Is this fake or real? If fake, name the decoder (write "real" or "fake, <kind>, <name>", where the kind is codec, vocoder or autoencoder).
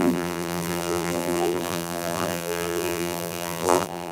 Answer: fake, vocoder, BigVGAN v2